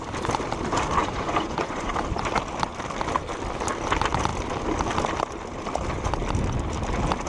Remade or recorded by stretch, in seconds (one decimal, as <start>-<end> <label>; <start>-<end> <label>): 0.0-1.0 recorded; 1.0-1.9 remade; 1.9-7.3 recorded